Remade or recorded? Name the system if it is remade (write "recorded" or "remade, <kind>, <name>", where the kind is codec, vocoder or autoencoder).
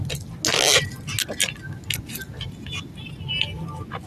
recorded